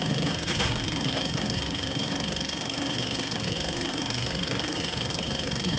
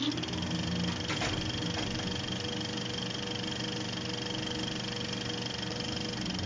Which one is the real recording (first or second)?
second